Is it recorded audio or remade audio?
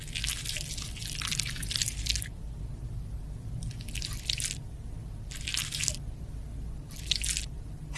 recorded